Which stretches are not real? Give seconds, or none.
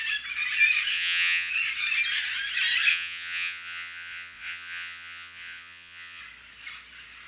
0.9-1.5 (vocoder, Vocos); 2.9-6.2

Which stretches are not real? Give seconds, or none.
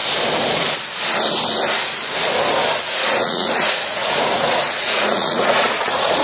2.8-6.2 (vocoder, Vocos)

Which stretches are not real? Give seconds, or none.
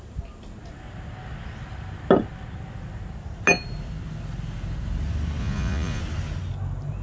5.4-6.0 (vocoder, Vocos)